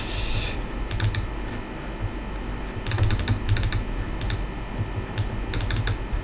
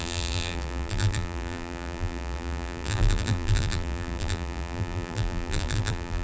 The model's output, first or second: second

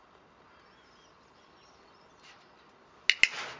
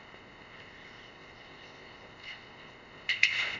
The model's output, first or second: second